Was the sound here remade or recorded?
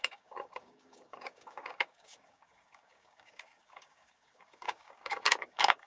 remade